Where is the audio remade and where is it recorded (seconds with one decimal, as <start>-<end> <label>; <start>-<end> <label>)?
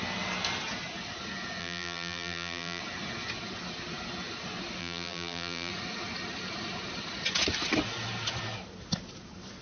0.0-1.6 recorded; 1.6-2.8 remade; 2.8-4.8 recorded; 4.8-5.7 remade; 5.7-9.6 recorded